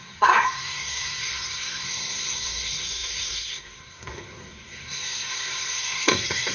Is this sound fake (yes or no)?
yes